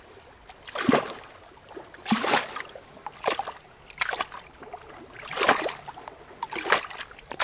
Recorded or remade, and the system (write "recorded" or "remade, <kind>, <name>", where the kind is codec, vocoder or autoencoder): recorded